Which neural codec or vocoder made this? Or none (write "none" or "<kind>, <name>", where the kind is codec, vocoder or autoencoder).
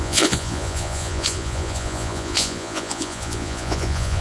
vocoder, Vocos